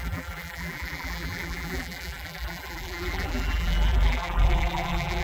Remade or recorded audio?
remade